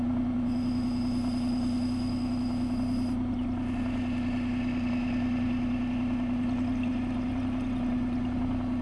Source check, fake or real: real